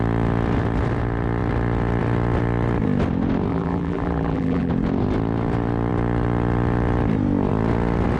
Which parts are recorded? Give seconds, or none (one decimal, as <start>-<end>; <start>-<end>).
0.0-3.5; 4.7-8.2